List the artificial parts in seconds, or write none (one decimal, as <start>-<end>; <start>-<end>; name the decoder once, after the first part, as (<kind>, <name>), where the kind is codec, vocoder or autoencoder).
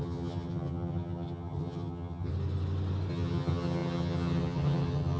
0.0-2.3 (vocoder, HiFi-GAN); 3.1-5.2